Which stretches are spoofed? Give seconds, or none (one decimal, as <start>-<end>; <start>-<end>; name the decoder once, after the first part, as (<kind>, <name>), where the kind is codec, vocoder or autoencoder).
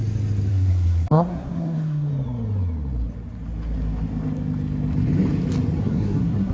0.5-2.1 (codec, SNAC); 5.8-6.5